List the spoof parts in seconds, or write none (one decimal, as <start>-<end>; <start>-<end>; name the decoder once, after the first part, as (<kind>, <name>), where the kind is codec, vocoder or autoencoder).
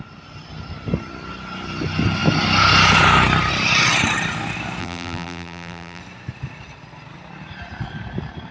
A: 4.8-6.0 (vocoder, BigVGAN v2)